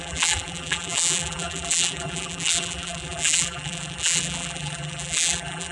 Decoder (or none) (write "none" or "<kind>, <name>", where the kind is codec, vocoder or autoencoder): vocoder, BigVGAN v2